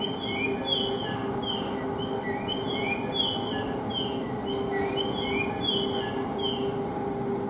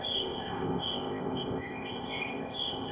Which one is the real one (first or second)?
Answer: first